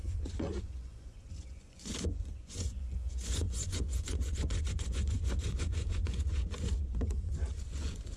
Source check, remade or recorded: remade